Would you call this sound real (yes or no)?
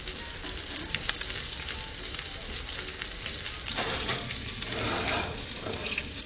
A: yes